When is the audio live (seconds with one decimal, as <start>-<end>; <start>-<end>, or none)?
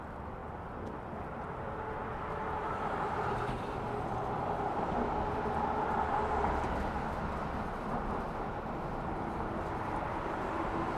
0.0-11.0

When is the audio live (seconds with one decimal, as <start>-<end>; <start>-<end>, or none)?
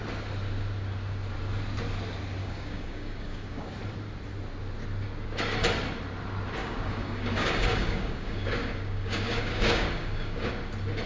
0.0-2.4; 3.7-6.6; 10.5-11.1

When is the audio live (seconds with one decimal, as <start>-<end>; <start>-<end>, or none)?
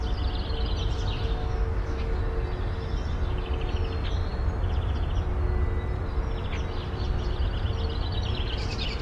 0.0-1.4; 2.2-9.0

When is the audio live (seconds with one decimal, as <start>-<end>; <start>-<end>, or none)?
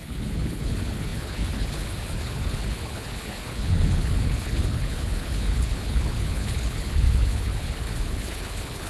none